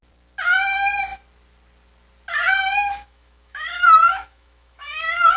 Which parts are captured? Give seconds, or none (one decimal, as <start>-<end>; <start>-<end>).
0.0-2.9